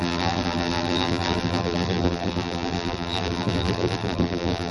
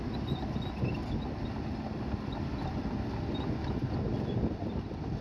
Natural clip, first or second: second